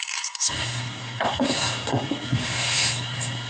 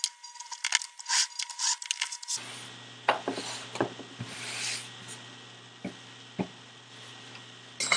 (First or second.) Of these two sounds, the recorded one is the second